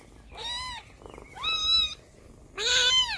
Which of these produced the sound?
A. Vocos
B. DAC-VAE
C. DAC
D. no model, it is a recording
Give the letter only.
D